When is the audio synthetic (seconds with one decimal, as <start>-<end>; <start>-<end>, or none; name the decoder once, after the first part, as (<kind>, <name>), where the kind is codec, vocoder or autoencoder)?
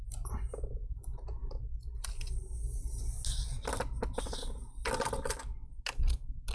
none